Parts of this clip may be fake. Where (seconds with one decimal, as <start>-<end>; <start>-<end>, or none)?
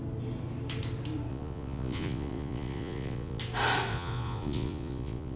1.3-3.4; 3.9-5.4